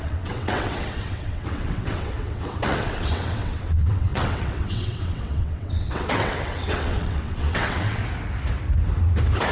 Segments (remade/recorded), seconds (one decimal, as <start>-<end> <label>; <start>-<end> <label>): 0.0-8.0 remade; 8.0-9.5 recorded